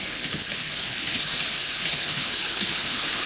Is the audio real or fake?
fake